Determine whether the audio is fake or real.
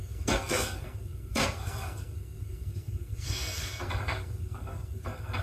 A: fake